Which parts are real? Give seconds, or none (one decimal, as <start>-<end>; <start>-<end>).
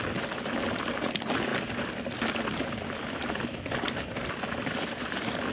0.0-5.5